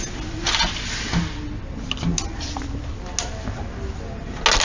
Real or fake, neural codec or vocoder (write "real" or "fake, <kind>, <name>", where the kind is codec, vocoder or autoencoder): real